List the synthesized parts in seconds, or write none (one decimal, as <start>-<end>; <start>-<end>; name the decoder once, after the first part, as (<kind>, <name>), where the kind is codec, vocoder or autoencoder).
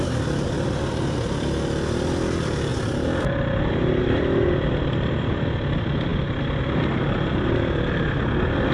none